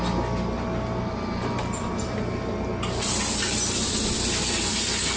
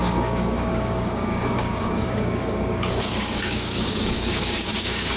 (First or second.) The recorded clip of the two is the first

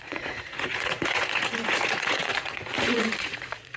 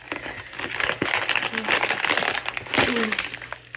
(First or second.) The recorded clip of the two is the second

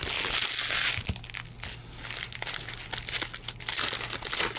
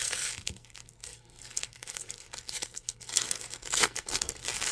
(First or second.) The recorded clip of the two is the first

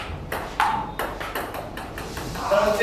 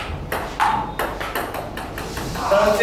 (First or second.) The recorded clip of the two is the second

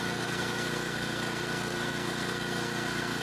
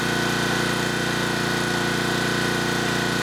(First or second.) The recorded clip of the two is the second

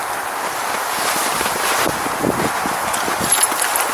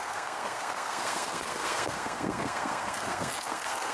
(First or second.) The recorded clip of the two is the first